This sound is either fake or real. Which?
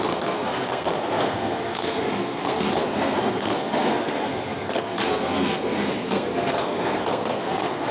fake